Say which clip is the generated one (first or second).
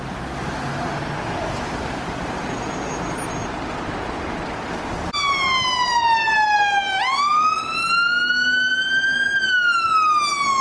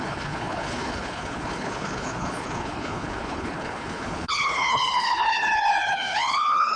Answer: second